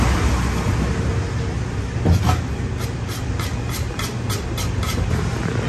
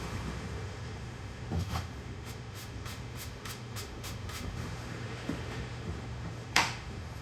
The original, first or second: first